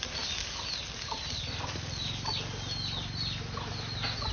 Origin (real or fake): real